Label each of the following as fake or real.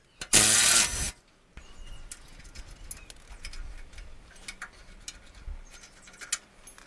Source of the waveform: real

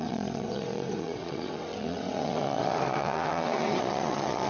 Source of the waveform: fake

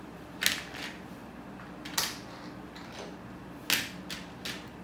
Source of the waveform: real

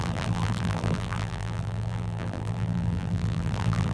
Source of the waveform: fake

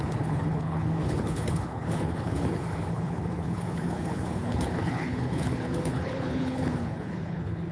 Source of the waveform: fake